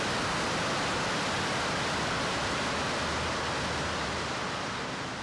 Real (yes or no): yes